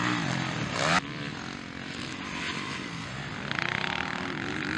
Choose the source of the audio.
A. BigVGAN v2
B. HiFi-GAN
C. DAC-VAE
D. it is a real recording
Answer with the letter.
D